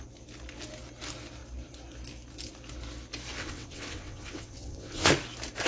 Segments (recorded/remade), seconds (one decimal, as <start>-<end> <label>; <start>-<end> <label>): 0.0-3.4 recorded; 3.4-5.1 remade; 5.1-5.7 recorded